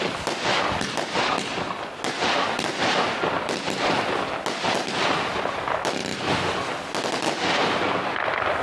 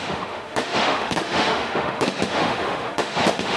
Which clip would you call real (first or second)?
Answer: first